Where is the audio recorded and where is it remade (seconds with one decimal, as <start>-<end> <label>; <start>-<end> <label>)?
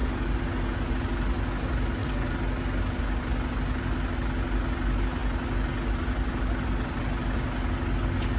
0.0-8.4 recorded